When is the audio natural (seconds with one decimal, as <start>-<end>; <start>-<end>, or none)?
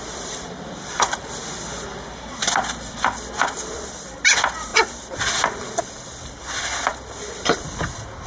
0.0-8.3